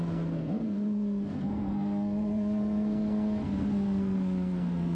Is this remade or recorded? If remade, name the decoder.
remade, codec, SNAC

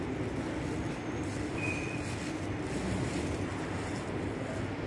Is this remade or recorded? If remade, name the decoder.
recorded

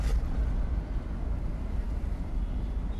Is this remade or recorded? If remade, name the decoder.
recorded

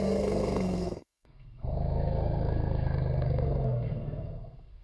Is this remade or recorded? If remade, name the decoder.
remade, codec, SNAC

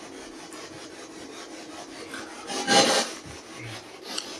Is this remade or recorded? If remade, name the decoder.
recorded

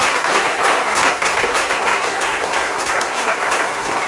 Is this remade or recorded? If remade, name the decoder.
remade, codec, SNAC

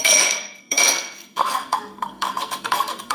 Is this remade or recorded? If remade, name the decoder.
remade, codec, SNAC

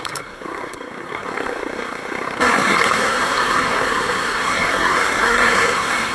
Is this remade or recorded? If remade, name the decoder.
remade, codec, SNAC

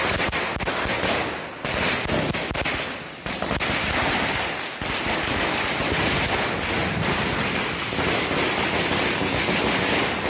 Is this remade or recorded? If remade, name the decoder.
recorded